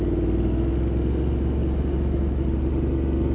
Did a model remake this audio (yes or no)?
no